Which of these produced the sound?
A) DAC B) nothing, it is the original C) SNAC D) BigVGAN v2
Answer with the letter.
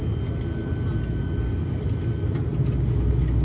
B